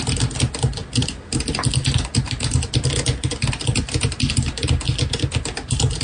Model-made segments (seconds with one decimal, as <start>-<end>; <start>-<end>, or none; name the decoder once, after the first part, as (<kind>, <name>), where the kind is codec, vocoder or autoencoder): none